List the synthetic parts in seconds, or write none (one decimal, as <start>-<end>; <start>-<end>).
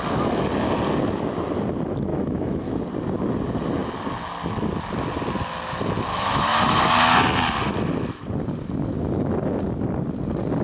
2.1-2.8; 6.1-6.8